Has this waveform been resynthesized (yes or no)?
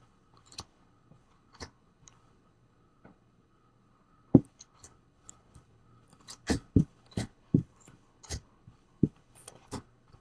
yes